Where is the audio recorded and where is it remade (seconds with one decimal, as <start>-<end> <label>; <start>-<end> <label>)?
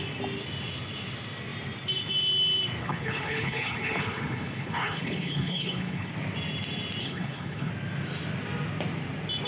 0.0-2.8 recorded; 2.8-6.1 remade; 6.1-7.0 recorded; 7.0-7.7 remade; 7.7-9.5 recorded